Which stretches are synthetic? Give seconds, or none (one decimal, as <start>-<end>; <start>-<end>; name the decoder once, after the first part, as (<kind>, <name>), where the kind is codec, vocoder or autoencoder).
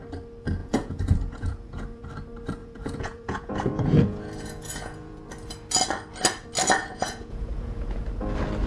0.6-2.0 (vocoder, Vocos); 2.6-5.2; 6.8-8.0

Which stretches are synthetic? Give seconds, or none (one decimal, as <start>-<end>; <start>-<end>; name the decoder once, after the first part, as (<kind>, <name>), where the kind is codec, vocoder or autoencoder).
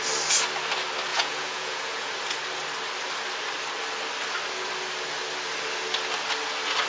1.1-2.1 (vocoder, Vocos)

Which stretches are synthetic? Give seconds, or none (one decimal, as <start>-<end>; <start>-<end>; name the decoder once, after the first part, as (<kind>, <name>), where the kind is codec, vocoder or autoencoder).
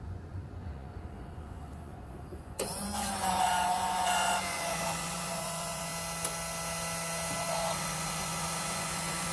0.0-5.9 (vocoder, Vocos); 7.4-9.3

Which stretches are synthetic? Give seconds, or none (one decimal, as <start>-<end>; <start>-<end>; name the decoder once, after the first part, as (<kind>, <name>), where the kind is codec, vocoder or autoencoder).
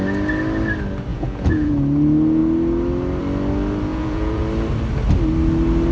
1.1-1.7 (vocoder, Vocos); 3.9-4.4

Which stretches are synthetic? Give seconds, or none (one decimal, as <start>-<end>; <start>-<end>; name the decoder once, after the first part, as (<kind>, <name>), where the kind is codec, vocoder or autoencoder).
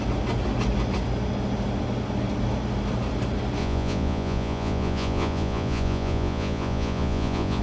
3.6-7.6 (vocoder, Vocos)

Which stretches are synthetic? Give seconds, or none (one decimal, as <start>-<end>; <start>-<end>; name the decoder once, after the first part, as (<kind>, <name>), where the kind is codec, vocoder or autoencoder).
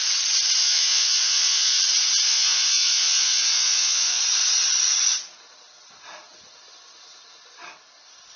0.6-1.8 (vocoder, Vocos); 2.3-4.2